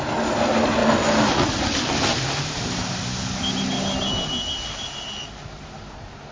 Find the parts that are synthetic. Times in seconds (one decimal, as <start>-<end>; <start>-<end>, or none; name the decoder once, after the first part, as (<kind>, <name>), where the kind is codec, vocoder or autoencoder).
none

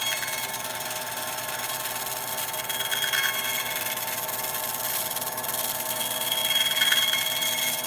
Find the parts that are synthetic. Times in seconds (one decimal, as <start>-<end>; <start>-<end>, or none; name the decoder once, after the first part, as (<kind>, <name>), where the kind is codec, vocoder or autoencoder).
none

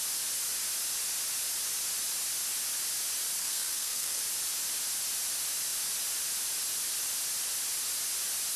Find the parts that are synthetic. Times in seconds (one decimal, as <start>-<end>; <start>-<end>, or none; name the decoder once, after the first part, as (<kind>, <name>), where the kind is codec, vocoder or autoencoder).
3.4-4.2 (codec, SNAC)